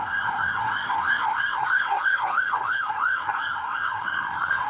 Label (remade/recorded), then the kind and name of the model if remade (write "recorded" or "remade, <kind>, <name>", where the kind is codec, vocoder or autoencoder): remade, codec, SNAC